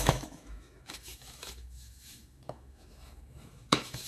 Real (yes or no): no